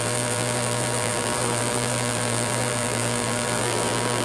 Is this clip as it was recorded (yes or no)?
no